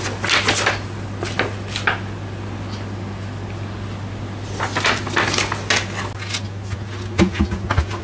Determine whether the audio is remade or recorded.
recorded